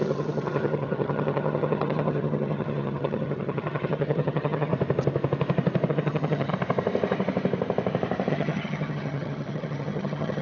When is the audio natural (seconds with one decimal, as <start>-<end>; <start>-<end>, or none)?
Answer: 4.7-5.9; 6.5-8.3